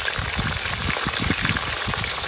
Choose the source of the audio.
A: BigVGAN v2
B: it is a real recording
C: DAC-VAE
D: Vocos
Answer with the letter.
B